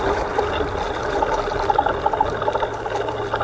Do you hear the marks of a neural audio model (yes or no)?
no